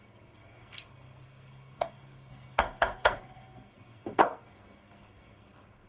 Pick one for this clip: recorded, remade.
remade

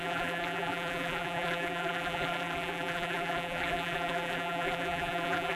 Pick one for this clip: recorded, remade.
remade